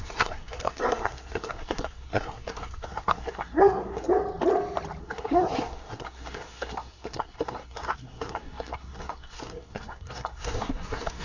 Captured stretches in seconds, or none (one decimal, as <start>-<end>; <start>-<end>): 4.1-5.0